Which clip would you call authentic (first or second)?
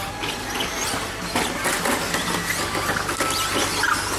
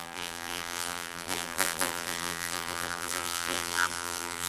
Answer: first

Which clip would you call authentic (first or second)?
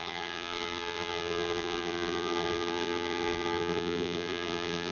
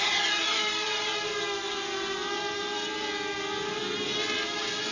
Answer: second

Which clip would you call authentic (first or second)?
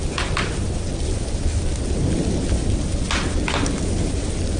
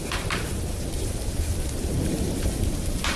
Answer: first